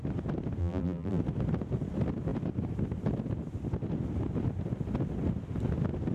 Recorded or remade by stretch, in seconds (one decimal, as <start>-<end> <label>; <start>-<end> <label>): 0.0-0.6 recorded; 0.6-1.2 remade; 1.2-6.1 recorded